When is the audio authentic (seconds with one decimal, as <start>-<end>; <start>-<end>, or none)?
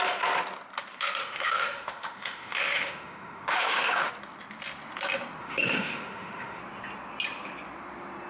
0.0-1.2; 4.1-5.4; 6.6-8.3